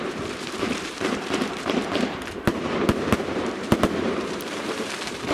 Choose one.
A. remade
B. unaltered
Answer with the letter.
A